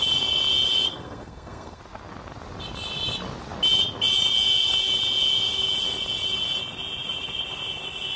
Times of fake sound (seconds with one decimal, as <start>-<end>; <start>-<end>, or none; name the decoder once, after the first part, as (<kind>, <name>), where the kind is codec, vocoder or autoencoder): 0.9-1.8 (codec, SNAC)